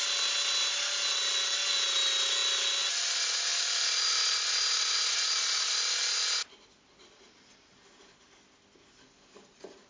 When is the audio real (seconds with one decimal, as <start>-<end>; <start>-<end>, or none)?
0.0-3.5; 5.7-9.9